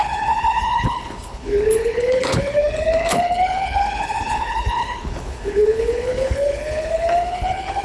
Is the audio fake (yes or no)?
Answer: yes